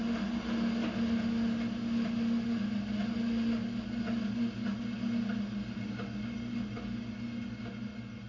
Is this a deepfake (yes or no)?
no